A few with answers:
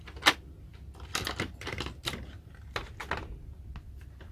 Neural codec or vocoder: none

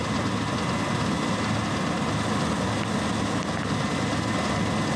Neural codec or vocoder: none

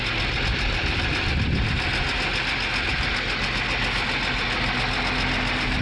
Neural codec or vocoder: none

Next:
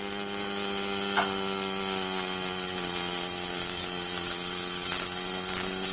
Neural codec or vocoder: none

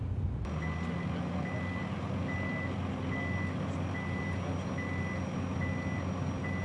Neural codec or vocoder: none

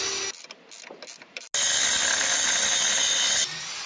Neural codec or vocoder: none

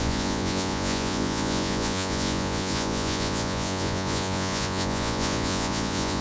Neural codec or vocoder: vocoder, Vocos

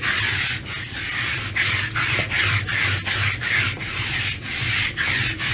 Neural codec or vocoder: none